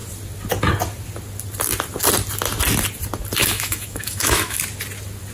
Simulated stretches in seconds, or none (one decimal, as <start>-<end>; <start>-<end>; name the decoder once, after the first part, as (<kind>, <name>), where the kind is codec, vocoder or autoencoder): 3.4-4.6 (autoencoder, DAC-VAE)